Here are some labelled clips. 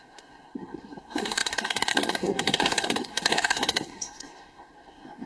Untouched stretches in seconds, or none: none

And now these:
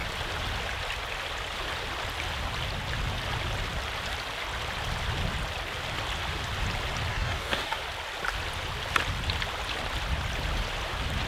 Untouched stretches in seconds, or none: 0.0-7.1; 7.8-11.3

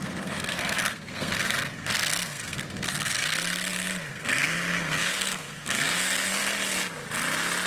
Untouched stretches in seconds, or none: 6.4-7.7

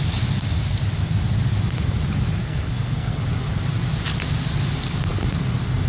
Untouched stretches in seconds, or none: 0.0-2.4; 3.2-5.9

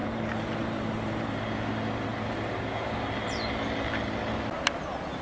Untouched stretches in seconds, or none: 1.4-5.2